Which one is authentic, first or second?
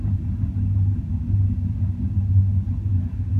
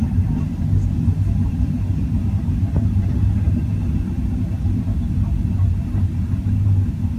first